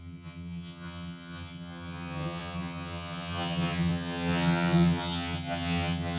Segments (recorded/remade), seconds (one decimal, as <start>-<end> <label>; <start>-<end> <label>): 0.0-6.2 remade